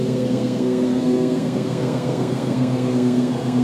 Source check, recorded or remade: remade